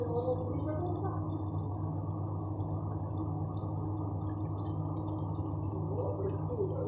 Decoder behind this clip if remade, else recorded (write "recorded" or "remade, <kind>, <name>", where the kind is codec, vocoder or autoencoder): recorded